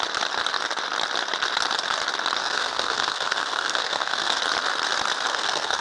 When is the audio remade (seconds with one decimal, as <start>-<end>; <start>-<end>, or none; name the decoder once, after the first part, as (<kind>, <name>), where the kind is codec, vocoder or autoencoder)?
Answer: 2.4-4.4 (codec, SNAC); 5.3-5.8